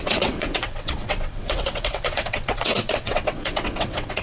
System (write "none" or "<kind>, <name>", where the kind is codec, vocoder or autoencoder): vocoder, WaveNeXt